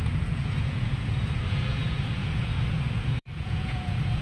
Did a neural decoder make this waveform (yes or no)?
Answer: yes